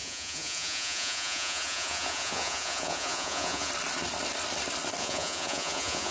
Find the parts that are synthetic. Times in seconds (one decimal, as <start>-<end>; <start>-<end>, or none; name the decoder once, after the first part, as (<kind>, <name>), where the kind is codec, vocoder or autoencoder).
0.0-3.7 (vocoder, Vocos); 5.0-6.1